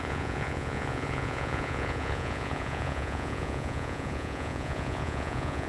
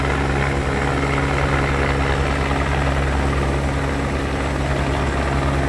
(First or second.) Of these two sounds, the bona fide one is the second